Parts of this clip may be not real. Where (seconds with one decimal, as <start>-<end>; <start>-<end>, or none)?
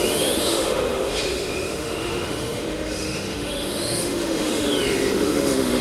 0.0-5.8